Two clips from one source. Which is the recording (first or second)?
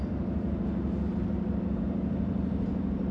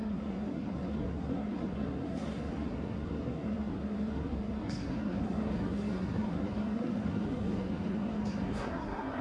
first